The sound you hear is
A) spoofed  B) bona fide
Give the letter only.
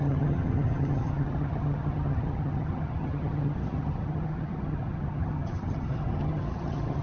A